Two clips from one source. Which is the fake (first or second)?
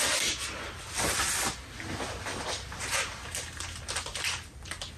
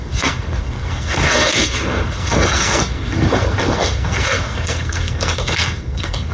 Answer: second